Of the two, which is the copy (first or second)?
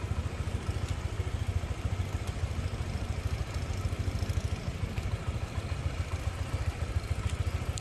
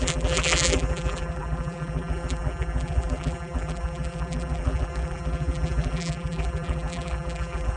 second